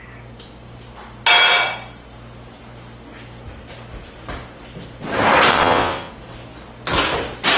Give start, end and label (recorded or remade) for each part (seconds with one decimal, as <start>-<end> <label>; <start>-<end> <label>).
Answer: 0.0-5.5 recorded; 5.5-6.1 remade; 6.1-7.6 recorded